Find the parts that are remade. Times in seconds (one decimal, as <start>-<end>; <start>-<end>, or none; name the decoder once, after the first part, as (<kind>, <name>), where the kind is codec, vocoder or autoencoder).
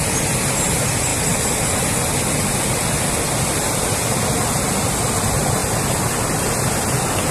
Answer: none